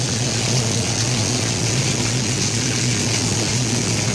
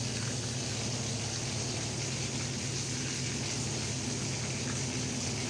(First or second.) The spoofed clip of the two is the first